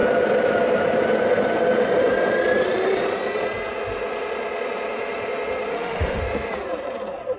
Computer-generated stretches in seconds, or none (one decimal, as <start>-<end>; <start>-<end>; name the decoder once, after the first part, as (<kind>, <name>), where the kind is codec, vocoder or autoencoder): 5.7-6.2 (autoencoder, DAC-VAE)